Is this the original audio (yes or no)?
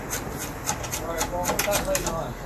yes